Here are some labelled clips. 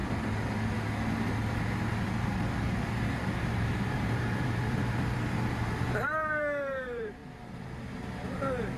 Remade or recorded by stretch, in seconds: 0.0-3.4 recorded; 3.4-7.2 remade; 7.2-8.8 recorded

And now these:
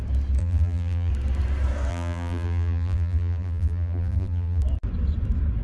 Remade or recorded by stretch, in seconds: 0.0-0.4 recorded; 0.4-1.1 remade; 1.1-1.9 recorded; 1.9-4.6 remade; 4.6-5.6 recorded

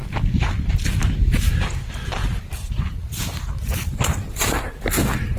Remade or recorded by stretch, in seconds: 0.0-2.2 recorded; 2.2-4.8 remade; 4.8-5.4 recorded

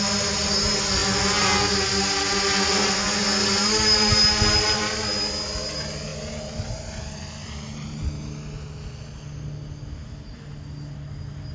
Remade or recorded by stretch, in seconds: 0.0-7.4 recorded; 7.4-8.0 remade; 8.0-11.5 recorded

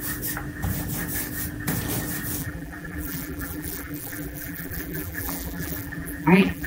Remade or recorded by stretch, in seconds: 0.0-2.4 recorded; 2.4-6.7 remade